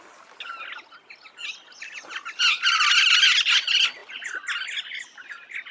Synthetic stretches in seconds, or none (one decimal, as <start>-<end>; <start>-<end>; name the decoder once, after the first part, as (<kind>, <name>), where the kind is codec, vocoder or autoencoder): none